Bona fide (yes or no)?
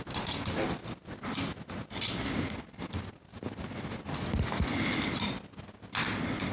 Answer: yes